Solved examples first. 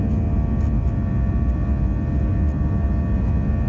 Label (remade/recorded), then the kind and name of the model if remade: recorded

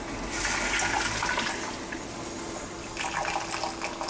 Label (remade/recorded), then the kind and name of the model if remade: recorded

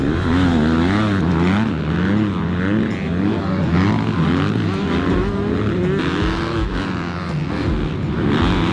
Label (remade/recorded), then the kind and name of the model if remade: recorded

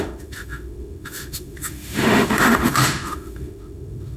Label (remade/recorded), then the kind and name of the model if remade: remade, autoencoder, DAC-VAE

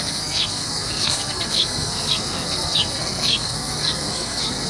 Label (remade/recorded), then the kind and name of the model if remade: remade, codec, SNAC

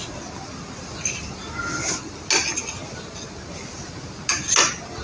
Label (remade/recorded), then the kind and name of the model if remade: recorded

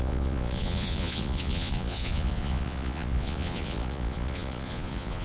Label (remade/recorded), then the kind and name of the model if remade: remade, vocoder, Vocos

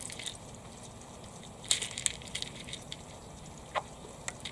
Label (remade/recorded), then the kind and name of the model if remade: recorded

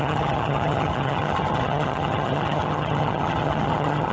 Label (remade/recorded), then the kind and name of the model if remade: remade, vocoder, HiFi-GAN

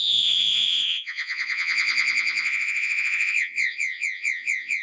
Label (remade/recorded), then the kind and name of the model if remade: remade, vocoder, Vocos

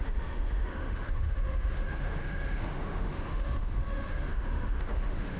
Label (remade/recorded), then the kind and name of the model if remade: remade, autoencoder, DAC-VAE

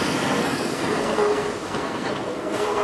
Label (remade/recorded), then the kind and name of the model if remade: remade, codec, SNAC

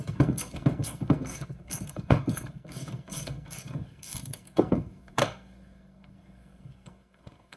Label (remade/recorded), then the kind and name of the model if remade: remade, codec, SNAC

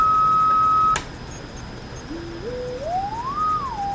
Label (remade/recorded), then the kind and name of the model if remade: recorded